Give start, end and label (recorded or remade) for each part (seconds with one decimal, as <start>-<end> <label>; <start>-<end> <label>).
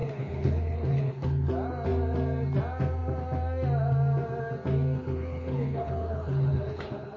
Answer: 0.0-1.5 remade; 1.5-5.0 recorded; 5.0-7.2 remade